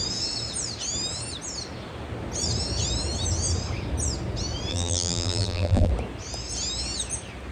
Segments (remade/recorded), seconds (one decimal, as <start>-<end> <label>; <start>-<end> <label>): 0.0-4.7 recorded; 4.7-5.9 remade; 5.9-7.5 recorded